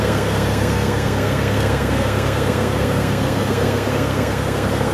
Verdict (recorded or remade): remade